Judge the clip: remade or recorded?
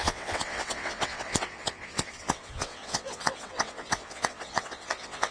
remade